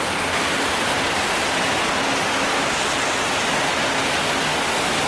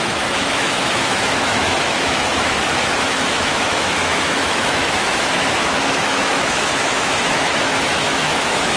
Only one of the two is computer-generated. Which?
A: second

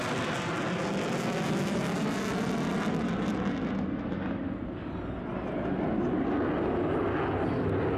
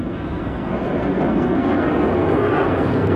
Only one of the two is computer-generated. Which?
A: second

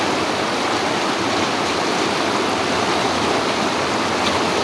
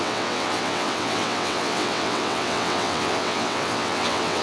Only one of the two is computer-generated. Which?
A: second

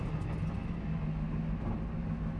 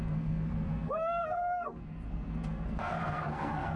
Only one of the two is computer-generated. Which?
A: second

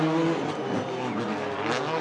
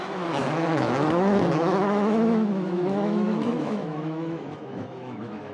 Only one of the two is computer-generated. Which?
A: second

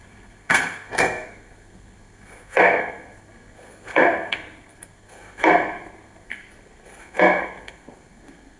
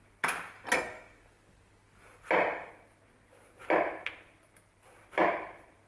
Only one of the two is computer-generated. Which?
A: first